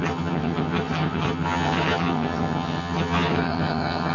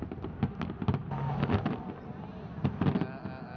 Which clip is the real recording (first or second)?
second